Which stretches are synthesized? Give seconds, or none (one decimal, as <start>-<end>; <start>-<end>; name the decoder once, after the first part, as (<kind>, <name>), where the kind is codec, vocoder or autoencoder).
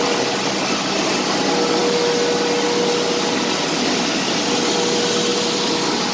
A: none